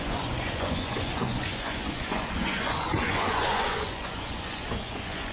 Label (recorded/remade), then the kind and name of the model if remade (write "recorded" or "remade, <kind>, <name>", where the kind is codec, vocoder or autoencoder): remade, vocoder, Vocos